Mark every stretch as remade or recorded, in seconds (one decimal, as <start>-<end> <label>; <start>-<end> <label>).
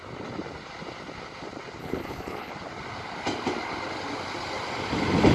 0.0-1.8 recorded; 1.8-2.5 remade; 2.5-5.3 recorded